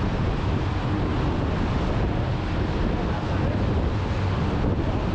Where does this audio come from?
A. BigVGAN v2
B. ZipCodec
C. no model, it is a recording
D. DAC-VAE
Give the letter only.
C